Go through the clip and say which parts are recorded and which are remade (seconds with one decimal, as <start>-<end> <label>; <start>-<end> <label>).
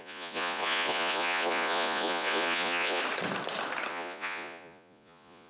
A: 0.0-3.0 remade; 3.0-3.9 recorded; 3.9-5.5 remade